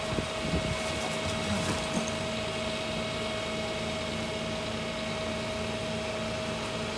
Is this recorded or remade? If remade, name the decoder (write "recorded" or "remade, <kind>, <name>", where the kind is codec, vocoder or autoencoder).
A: recorded